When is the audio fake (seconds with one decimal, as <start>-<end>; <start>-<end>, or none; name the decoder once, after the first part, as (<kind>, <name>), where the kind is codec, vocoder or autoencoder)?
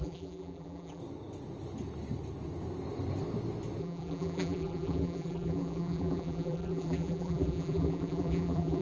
0.0-1.0 (vocoder, BigVGAN v2); 3.8-8.8